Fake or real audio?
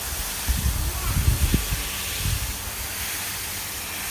real